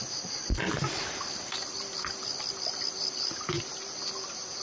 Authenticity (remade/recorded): recorded